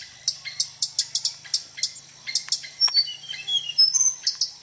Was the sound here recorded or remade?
recorded